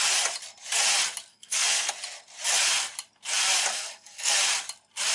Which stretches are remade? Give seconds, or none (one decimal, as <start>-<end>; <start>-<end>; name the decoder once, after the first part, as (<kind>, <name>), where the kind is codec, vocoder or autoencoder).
1.3-1.9 (codec, SNAC); 3.7-4.3